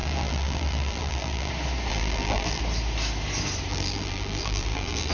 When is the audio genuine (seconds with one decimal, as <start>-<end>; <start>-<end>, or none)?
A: 1.5-1.9; 2.6-3.7